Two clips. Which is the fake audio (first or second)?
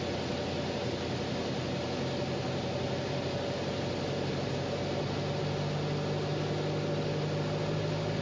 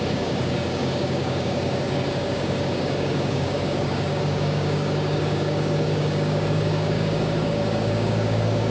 second